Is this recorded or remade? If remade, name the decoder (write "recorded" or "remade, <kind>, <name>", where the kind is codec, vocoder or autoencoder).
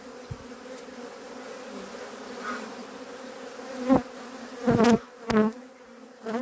recorded